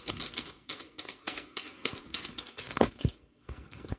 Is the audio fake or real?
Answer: fake